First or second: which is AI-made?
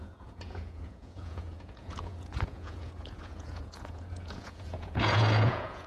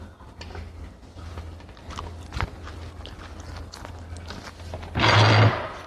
first